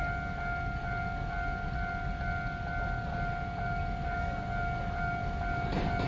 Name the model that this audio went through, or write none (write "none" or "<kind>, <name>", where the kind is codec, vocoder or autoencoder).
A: none